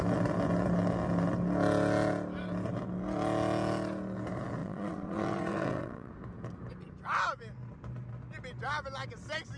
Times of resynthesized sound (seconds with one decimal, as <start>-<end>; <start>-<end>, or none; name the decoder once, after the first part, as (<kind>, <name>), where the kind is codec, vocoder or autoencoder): 4.6-6.1 (vocoder, WaveNeXt)